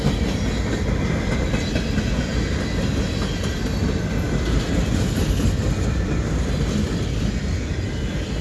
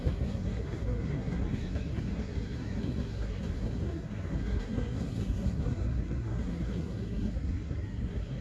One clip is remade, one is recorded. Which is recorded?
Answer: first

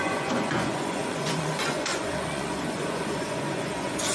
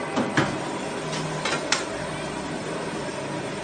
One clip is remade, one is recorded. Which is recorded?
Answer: second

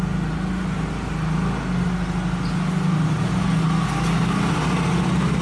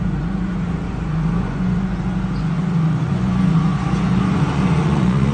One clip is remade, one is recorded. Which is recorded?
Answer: first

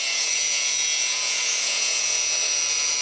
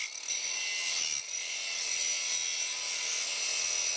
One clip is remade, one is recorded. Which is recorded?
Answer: second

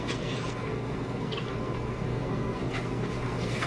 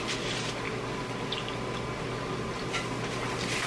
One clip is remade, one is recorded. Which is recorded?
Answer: second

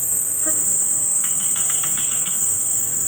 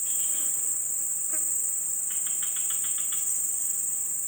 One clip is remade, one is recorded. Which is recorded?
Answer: second